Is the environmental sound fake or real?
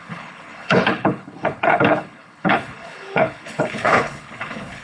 fake